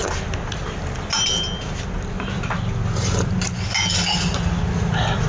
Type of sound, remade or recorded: recorded